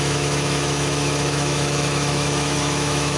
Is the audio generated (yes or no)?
yes